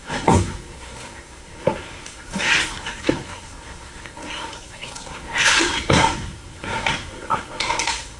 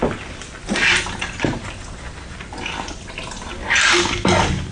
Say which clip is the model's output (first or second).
first